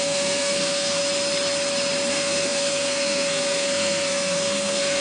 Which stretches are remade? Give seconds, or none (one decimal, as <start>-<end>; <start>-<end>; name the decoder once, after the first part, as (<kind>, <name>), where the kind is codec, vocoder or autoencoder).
0.0-1.0 (codec, SNAC); 2.1-5.0